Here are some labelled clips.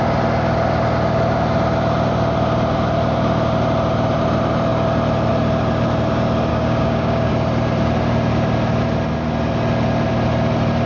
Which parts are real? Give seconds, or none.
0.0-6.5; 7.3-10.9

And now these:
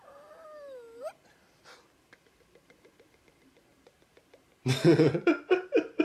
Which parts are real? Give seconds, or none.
0.0-6.0

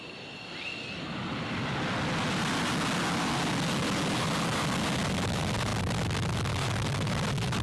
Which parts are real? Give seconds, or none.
0.0-7.6

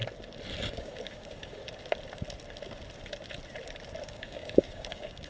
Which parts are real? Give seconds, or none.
0.0-0.7; 1.6-4.0

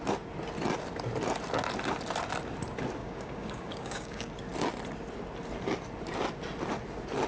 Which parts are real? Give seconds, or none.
0.0-3.0; 4.3-7.3

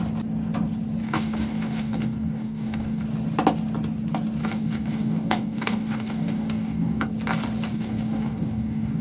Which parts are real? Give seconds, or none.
0.0-1.0; 3.0-4.4; 7.1-7.7

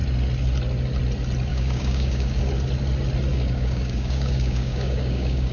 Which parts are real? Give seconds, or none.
0.0-1.5; 2.4-3.3